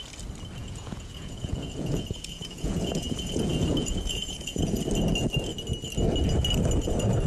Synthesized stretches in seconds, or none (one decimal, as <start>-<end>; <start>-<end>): 0.6-4.8